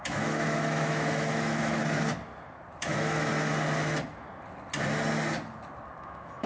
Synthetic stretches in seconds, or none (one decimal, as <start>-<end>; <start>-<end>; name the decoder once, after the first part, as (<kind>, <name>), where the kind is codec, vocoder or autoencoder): 0.0-1.8 (autoencoder, DAC-VAE); 2.8-3.3; 6.0-6.5